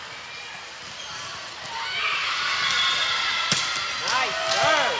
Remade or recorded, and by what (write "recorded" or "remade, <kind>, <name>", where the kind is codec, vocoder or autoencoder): recorded